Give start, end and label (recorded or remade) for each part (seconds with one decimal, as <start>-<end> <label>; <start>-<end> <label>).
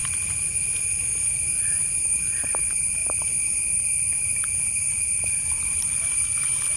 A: 0.0-0.6 recorded; 0.6-6.8 remade